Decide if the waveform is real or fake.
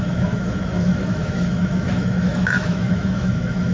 fake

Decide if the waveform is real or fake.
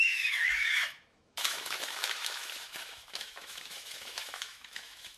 fake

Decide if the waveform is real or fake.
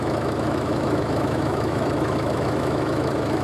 fake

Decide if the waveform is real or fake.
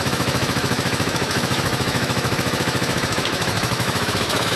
fake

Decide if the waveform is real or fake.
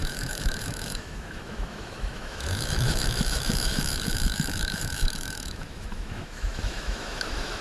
fake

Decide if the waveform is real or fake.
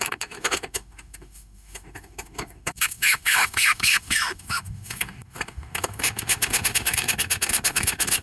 fake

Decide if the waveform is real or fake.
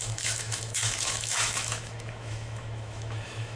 fake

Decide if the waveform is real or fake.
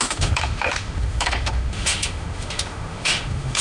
fake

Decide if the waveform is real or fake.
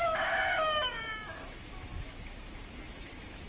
fake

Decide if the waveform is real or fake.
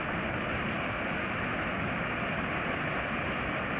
real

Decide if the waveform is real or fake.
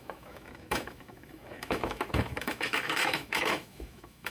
fake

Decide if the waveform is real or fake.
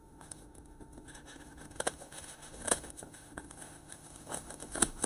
fake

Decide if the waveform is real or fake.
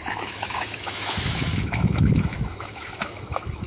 fake